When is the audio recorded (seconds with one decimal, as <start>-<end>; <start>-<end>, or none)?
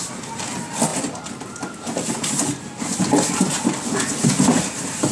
0.0-5.1